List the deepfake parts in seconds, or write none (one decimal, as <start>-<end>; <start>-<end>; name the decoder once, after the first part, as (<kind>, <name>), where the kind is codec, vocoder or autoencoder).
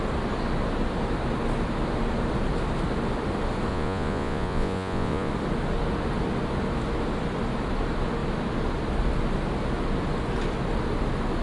3.7-5.3 (vocoder, Vocos)